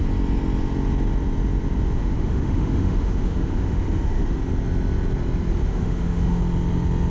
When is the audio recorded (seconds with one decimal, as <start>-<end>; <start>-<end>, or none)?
0.0-2.0; 4.4-5.6; 6.4-7.1